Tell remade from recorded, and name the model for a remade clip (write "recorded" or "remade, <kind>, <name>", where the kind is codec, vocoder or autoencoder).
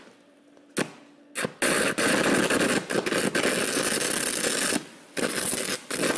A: recorded